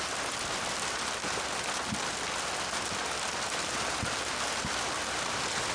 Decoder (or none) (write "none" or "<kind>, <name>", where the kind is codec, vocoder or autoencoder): none